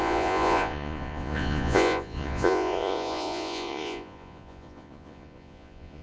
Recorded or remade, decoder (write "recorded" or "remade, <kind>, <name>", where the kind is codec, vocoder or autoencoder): remade, vocoder, Vocos